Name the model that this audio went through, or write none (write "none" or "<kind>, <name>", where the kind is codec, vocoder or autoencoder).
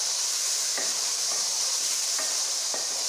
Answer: vocoder, BigVGAN v2